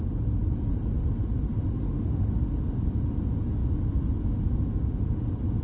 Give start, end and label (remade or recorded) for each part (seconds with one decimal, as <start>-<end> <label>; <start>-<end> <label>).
0.0-1.8 recorded; 1.8-2.3 remade; 2.3-5.6 recorded